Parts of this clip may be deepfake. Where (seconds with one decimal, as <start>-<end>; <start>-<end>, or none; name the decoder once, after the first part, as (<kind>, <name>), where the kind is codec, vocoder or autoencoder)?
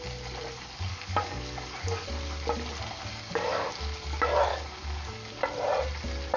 0.9-2.1 (codec, DAC); 3.1-3.7; 4.5-5.4